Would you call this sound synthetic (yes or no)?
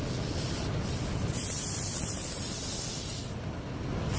no